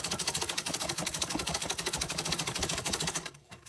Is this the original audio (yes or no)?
no